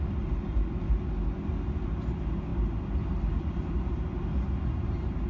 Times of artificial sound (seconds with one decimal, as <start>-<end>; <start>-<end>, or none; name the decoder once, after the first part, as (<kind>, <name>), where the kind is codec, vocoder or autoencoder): none